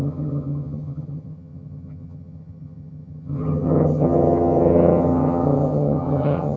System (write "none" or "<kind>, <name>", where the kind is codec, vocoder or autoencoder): vocoder, HiFi-GAN